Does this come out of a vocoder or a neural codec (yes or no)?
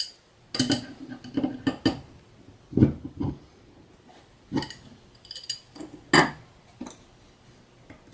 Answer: no